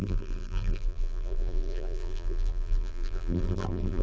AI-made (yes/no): yes